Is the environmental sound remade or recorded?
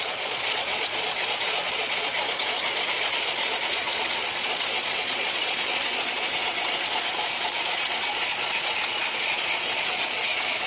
remade